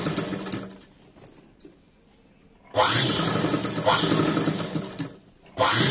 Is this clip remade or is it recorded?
recorded